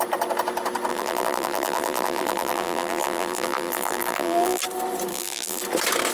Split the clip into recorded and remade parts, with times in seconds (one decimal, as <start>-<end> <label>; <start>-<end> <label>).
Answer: 0.0-0.9 recorded; 0.9-4.6 remade; 4.6-5.1 recorded; 5.1-5.6 remade; 5.6-6.1 recorded